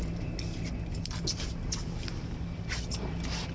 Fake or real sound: real